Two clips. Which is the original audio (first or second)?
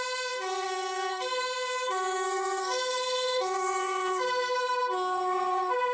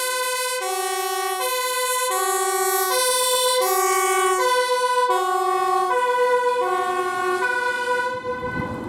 second